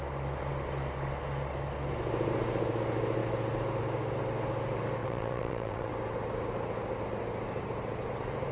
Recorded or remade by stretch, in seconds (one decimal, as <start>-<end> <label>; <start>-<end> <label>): 0.0-5.0 recorded; 5.0-5.9 remade; 5.9-8.5 recorded